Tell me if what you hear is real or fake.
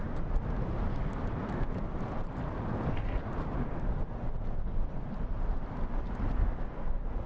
real